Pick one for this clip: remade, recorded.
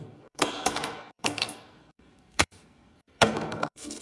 remade